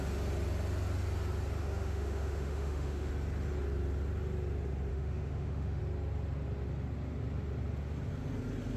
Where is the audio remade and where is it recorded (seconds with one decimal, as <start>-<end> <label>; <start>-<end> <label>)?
0.0-1.6 recorded; 1.6-3.1 remade; 3.1-4.9 recorded; 4.9-5.8 remade; 5.8-8.8 recorded

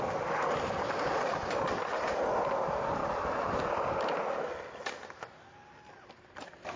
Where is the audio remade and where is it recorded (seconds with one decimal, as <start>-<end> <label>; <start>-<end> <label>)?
0.0-6.8 recorded

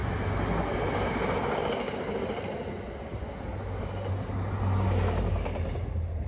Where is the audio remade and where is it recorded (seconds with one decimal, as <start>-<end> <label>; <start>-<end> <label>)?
0.0-6.3 recorded

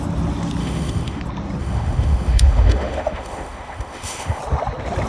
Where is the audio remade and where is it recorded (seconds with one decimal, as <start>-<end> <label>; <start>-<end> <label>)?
0.0-0.6 recorded; 0.6-1.2 remade; 1.2-1.6 recorded; 1.6-4.4 remade; 4.4-5.1 recorded

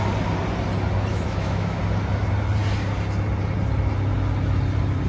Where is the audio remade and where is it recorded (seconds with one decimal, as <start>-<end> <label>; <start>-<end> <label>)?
0.0-1.1 recorded; 1.1-1.8 remade; 1.8-5.1 recorded

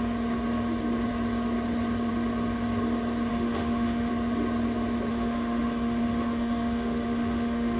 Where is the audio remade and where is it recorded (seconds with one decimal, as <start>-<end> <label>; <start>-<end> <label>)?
0.0-3.3 recorded; 3.3-4.1 remade; 4.1-5.1 recorded; 5.1-7.8 remade

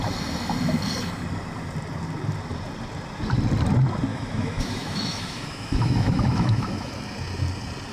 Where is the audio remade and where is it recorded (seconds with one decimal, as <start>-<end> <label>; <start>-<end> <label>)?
0.0-4.1 recorded; 4.1-6.9 remade; 6.9-7.9 recorded

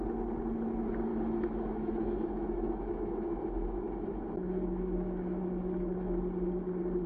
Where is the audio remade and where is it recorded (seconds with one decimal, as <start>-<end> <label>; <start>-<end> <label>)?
0.0-1.1 recorded; 1.1-5.4 remade; 5.4-7.1 recorded